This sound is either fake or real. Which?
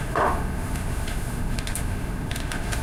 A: fake